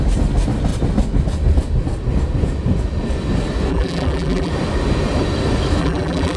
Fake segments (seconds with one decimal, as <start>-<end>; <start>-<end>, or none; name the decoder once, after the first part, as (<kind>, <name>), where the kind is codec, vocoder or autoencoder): 3.7-4.5 (vocoder, BigVGAN v2); 5.8-6.4